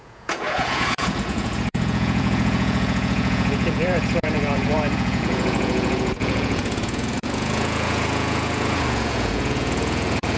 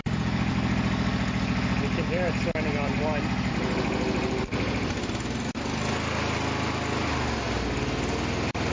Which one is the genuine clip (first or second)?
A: second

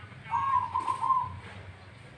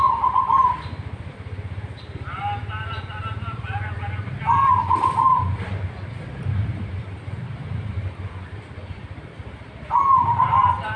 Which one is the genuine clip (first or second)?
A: first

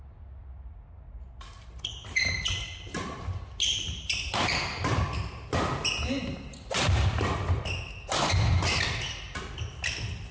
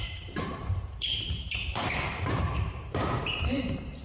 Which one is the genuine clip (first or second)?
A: first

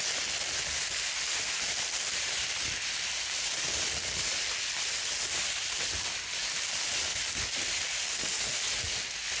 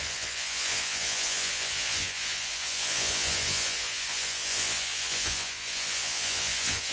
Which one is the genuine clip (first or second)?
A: first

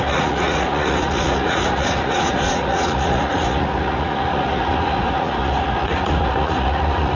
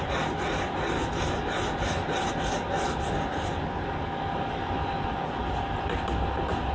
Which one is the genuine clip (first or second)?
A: second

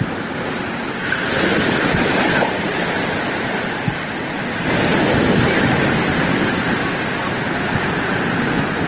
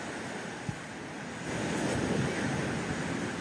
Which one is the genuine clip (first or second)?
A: second